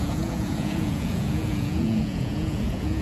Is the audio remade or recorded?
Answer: remade